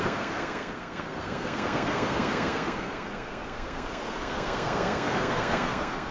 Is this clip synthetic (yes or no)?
yes